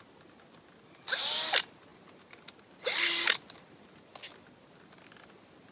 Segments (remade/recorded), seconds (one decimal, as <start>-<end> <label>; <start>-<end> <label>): 0.0-5.7 recorded